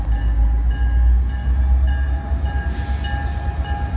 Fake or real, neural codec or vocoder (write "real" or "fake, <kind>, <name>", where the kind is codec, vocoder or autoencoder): real